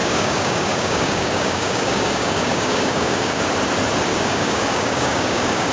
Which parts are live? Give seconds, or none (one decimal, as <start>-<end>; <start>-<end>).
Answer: 3.4-4.1